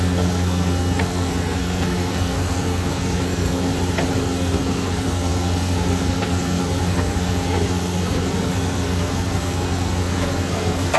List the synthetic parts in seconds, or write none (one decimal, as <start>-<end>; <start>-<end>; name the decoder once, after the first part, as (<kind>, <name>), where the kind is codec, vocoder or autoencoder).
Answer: 0.0-3.7 (codec, SNAC); 4.2-11.0